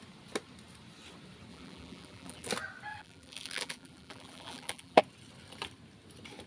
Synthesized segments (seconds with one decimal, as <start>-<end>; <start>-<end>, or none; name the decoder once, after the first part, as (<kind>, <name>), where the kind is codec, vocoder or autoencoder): 1.5-2.5 (vocoder, BigVGAN v2); 2.9-5.0